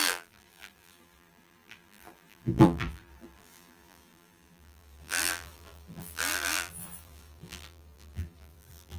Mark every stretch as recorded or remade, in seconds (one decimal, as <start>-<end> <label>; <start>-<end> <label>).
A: 0.0-9.0 remade